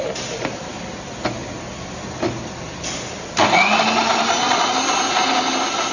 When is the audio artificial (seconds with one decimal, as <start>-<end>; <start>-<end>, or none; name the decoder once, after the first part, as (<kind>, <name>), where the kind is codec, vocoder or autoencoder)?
none